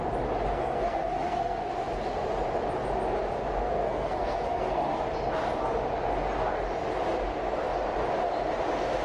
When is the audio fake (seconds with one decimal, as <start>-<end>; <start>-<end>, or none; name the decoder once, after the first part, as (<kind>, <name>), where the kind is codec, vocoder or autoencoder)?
0.5-1.7 (codec, SNAC); 3.6-5.0